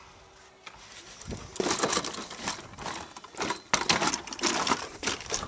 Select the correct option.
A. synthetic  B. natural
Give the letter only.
B